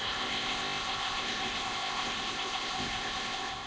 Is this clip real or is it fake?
fake